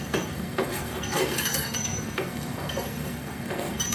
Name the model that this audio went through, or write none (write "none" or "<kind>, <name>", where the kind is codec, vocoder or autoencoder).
codec, SNAC